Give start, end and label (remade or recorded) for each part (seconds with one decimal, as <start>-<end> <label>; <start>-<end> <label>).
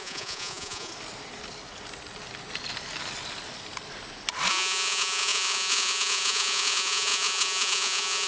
0.0-0.9 remade; 0.9-4.5 recorded; 4.5-8.3 remade